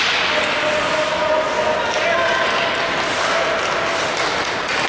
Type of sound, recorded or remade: recorded